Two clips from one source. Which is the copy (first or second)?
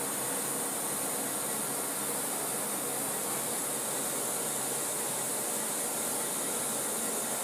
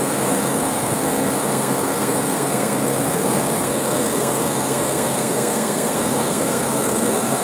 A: second